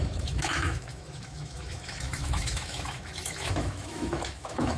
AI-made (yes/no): yes